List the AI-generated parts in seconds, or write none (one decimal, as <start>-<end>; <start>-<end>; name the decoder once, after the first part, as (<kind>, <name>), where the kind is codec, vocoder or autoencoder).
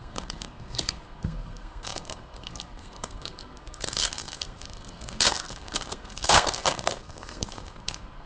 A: 0.0-8.3 (codec, SNAC)